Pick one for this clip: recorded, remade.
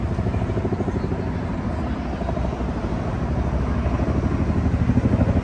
recorded